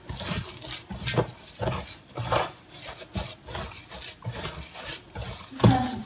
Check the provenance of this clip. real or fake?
real